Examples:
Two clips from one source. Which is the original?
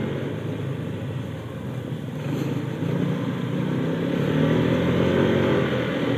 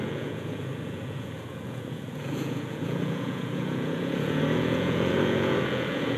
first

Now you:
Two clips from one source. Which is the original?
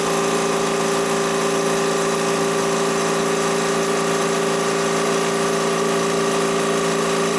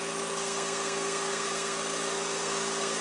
first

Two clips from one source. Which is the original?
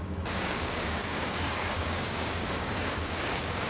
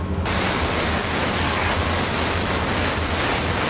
second